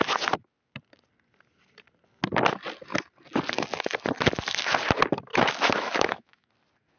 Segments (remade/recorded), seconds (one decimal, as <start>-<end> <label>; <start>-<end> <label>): 0.0-5.3 recorded; 5.3-6.5 remade; 6.5-7.0 recorded